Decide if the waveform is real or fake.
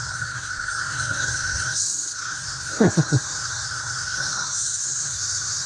fake